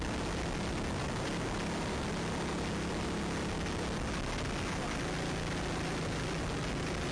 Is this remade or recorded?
recorded